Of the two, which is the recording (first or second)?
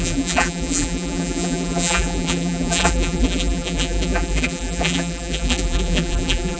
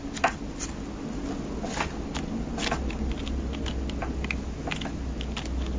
second